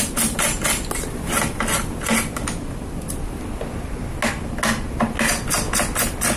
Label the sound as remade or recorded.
recorded